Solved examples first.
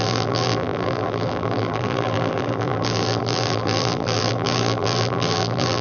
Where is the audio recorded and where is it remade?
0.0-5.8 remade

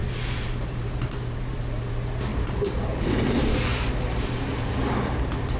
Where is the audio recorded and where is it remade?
0.0-1.9 remade; 1.9-2.3 recorded; 2.3-4.7 remade; 4.7-5.6 recorded

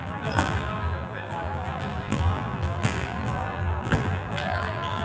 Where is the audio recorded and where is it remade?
0.0-5.0 remade

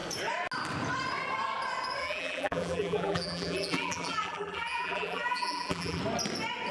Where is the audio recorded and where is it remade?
0.0-2.0 recorded; 2.0-6.0 remade; 6.0-6.7 recorded